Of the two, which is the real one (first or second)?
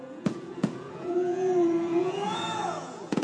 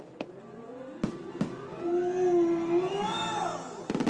second